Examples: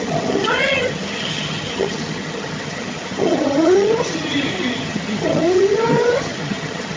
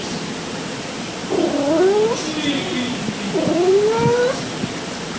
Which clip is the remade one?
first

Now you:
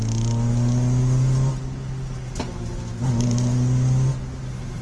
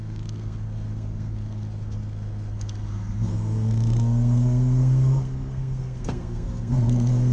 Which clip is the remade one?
second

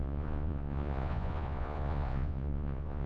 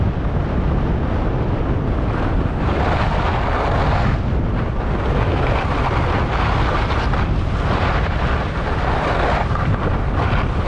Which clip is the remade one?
first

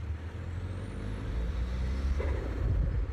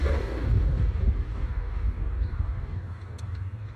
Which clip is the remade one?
second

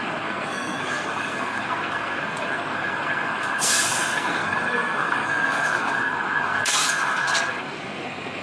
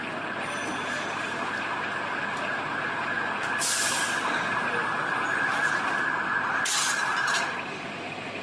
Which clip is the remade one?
first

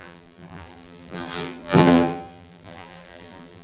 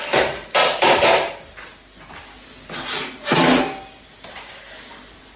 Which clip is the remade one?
first